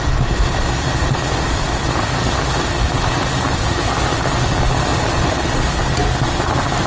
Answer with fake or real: real